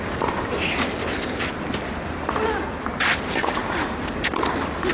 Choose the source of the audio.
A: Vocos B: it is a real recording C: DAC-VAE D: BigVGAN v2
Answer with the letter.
D